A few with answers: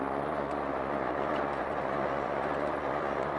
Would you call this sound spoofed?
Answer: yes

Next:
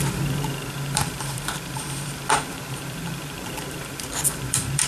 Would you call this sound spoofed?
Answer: yes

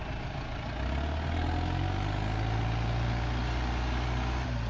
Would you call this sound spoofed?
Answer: no